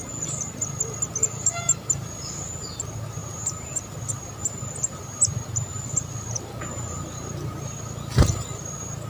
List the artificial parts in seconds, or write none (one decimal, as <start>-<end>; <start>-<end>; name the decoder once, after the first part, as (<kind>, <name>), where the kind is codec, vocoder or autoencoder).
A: 1.2-2.5 (vocoder, BigVGAN v2); 5.7-6.6